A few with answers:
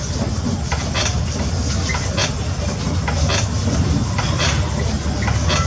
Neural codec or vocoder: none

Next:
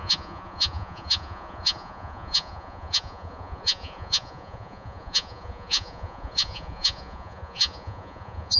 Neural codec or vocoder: vocoder, Vocos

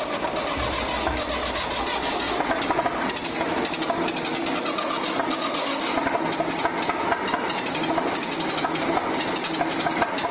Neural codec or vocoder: none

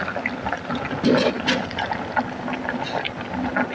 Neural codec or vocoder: none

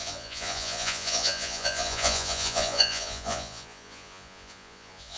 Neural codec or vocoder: vocoder, Vocos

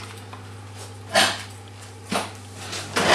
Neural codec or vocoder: none